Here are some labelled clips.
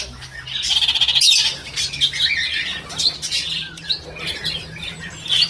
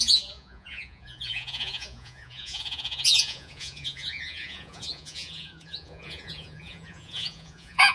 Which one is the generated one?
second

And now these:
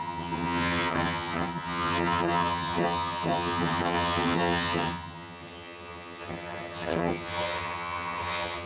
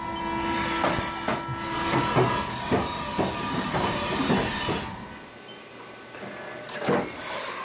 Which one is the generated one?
first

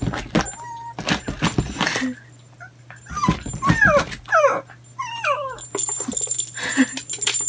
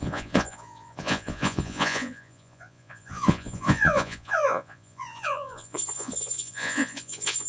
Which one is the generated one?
second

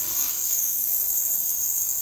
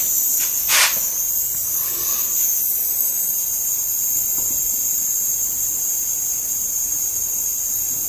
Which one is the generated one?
first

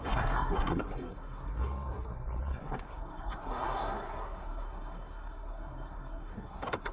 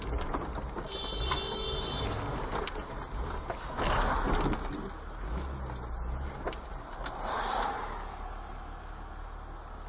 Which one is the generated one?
first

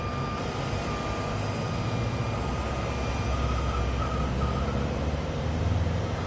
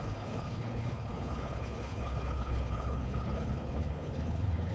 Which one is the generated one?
second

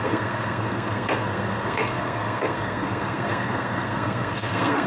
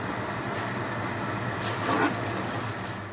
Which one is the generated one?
first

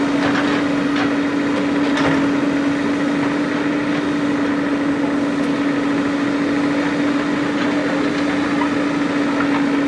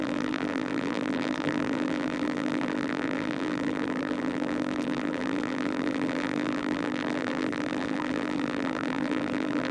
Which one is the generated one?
second